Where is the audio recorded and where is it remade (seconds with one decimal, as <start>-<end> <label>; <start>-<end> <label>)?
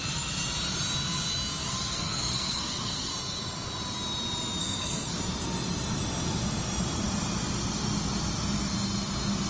0.0-1.6 recorded; 1.6-3.1 remade; 3.1-4.6 recorded; 4.6-5.2 remade; 5.2-9.5 recorded